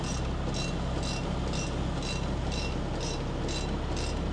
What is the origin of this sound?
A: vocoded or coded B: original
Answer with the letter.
B